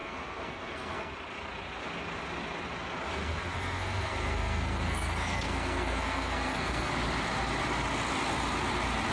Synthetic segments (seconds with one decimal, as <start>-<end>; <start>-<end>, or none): 0.0-1.1; 3.2-6.9